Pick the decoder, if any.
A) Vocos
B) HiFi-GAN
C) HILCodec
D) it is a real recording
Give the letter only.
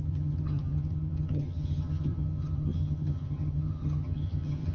B